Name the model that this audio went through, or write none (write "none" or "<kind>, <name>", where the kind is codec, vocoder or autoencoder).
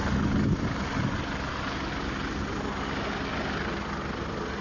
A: none